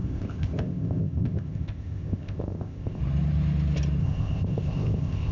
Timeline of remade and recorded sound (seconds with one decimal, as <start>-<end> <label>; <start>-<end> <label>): 0.0-3.0 remade; 3.0-4.0 recorded; 4.0-5.3 remade

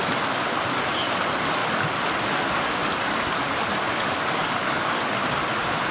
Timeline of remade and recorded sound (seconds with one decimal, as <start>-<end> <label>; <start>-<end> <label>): 0.0-3.9 recorded; 3.9-4.8 remade; 4.8-5.9 recorded

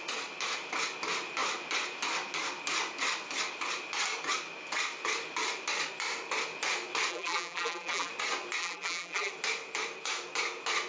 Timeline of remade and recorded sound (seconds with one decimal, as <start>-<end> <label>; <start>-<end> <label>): 0.0-7.1 recorded; 7.1-8.1 remade; 8.1-8.6 recorded; 8.6-9.3 remade; 9.3-10.9 recorded

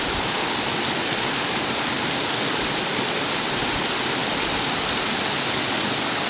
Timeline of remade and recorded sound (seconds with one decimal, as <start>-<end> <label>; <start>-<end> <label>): 0.0-6.3 recorded

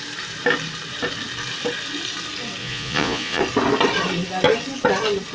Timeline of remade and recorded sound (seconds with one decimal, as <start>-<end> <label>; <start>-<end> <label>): 0.0-2.6 recorded; 2.6-3.4 remade; 3.4-5.3 recorded

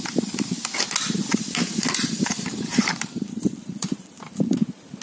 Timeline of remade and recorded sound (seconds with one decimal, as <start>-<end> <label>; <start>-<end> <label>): 0.0-1.3 recorded; 1.3-4.3 remade; 4.3-5.0 recorded

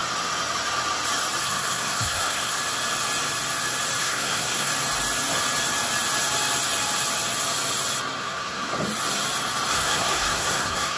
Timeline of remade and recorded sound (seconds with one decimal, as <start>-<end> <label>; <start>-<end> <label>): 0.0-1.4 recorded; 1.4-2.6 remade; 2.6-4.0 recorded; 4.0-4.7 remade; 4.7-8.2 recorded; 8.2-8.7 remade; 8.7-9.7 recorded; 9.7-11.0 remade